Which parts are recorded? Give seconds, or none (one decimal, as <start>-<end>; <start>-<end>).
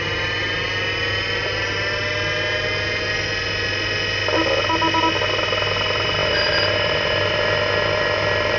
0.0-8.6